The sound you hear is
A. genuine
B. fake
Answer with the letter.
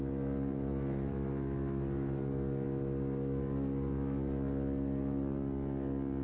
A